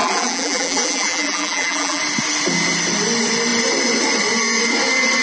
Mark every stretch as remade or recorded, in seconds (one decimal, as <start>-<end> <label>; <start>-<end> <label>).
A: 0.0-2.0 remade; 2.0-5.2 recorded